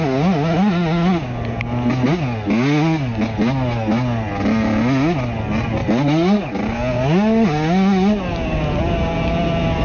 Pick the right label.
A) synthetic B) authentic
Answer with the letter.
B